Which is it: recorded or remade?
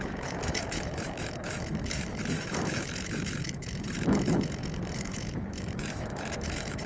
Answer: remade